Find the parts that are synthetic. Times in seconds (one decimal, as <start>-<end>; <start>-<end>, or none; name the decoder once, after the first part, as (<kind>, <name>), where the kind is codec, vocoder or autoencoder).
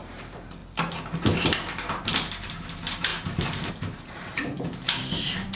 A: 0.0-5.6 (vocoder, BigVGAN v2)